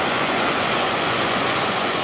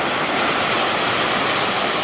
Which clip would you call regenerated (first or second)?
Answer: first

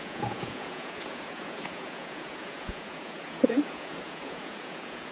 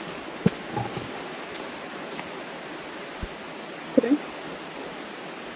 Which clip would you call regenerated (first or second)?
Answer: first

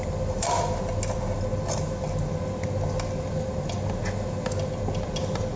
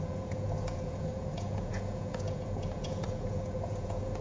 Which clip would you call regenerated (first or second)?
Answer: second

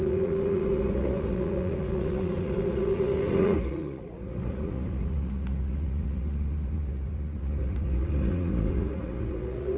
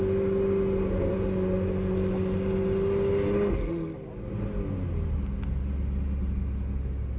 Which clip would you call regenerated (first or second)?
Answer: first